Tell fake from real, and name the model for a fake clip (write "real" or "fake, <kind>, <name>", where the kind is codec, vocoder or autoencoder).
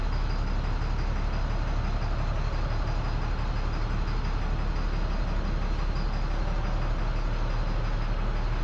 real